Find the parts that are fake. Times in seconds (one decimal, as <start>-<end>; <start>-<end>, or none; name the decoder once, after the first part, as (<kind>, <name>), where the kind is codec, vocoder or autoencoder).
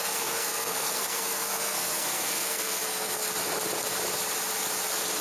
0.0-3.2 (codec, SNAC)